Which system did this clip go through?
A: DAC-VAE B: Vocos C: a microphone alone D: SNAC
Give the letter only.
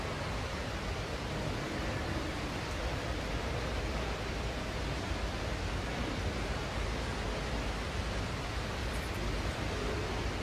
C